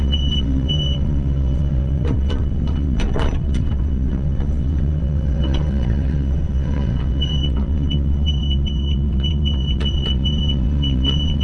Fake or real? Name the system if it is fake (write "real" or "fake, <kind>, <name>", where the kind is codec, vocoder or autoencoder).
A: fake, vocoder, WaveNeXt